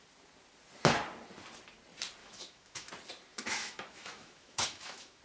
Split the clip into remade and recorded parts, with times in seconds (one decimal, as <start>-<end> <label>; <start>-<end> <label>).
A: 0.0-2.2 recorded; 2.2-2.9 remade; 2.9-3.3 recorded; 3.3-5.2 remade

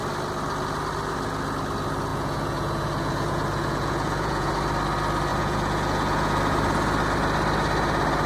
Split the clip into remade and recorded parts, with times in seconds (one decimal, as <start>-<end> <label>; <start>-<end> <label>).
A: 0.0-2.1 recorded; 2.1-4.5 remade; 4.5-5.3 recorded; 5.3-6.4 remade; 6.4-8.3 recorded

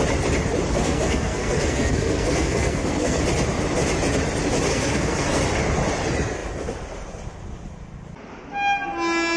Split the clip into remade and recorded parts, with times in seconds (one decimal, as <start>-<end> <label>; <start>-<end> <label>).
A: 0.0-0.7 recorded; 0.7-3.2 remade; 3.2-4.7 recorded; 4.7-5.4 remade; 5.4-9.4 recorded

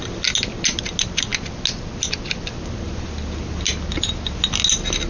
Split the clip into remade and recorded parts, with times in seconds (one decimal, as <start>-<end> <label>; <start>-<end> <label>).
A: 0.0-5.1 recorded

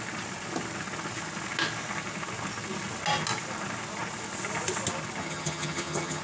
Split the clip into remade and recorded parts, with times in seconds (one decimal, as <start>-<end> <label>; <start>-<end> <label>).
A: 0.0-5.2 recorded; 5.2-6.2 remade

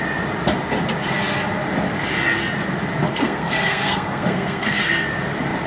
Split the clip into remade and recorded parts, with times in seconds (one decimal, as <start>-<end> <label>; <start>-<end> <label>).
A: 0.0-3.1 recorded; 3.1-4.9 remade; 4.9-5.7 recorded

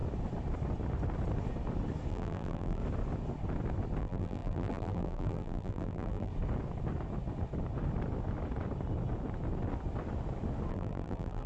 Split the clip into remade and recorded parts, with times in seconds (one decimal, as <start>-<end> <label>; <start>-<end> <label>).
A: 0.0-2.1 recorded; 2.1-2.8 remade; 2.8-4.0 recorded; 4.0-6.3 remade; 6.3-10.7 recorded; 10.7-11.5 remade

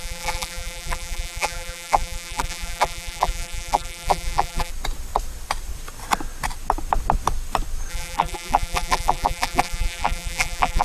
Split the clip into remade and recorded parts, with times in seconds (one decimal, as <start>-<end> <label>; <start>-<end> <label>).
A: 0.0-4.7 remade; 4.7-7.9 recorded; 7.9-10.8 remade